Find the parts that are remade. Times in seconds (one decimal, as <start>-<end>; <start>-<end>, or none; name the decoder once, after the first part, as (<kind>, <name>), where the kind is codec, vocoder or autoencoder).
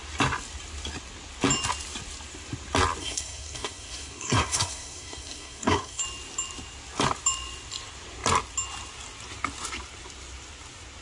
3.0-6.0 (codec, SNAC)